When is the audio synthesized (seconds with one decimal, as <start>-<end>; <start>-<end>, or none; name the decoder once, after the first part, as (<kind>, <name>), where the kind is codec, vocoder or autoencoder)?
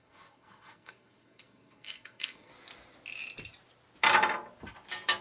0.0-2.5 (codec, SNAC)